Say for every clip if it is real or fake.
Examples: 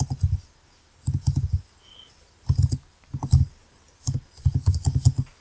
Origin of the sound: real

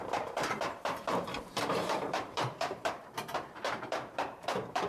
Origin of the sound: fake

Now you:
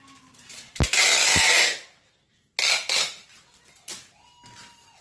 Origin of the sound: real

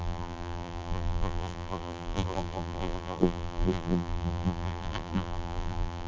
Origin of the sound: fake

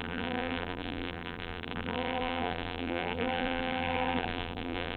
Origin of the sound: fake